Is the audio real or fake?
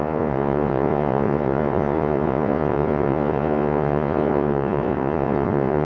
fake